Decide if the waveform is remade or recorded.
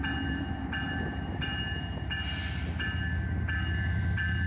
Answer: recorded